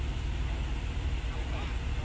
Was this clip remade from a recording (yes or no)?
yes